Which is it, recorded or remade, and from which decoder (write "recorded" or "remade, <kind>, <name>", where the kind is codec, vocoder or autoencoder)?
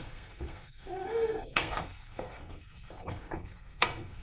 remade, codec, SNAC